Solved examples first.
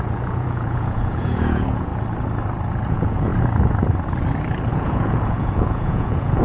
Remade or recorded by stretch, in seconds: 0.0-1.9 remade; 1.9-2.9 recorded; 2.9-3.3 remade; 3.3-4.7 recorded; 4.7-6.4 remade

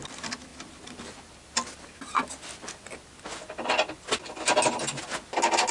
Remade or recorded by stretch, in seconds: 0.0-5.7 recorded